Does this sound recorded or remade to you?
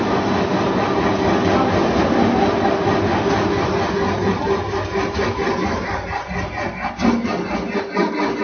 recorded